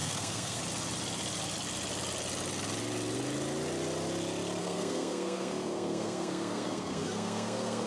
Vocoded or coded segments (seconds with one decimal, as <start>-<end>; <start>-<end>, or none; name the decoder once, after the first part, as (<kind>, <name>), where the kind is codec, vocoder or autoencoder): 0.0-0.6 (codec, SNAC); 4.6-7.9